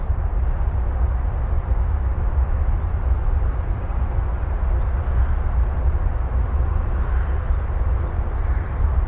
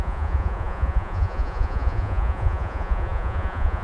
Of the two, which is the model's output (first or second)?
second